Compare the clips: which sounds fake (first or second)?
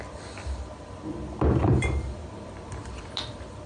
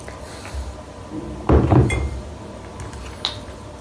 first